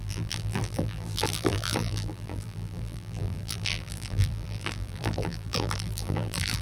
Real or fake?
fake